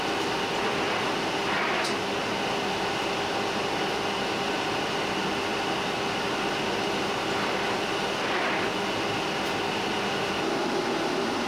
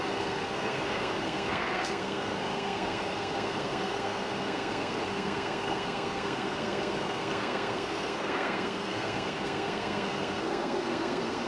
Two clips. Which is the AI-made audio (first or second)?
second